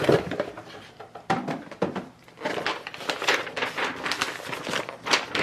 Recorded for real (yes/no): yes